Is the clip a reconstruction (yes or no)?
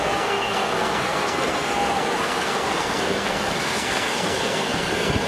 yes